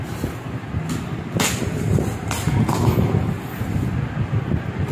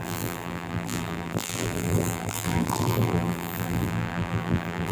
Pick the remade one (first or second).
second